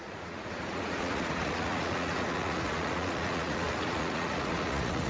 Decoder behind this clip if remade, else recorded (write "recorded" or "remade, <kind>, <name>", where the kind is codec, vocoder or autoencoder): remade, vocoder, Vocos